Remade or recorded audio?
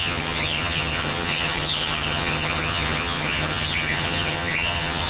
remade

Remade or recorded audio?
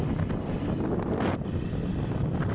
recorded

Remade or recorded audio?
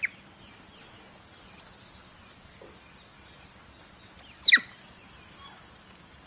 recorded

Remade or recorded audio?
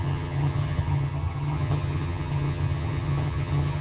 remade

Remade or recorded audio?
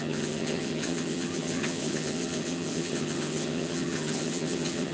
remade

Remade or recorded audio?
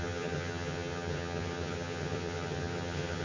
remade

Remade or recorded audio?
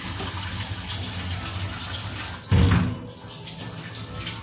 recorded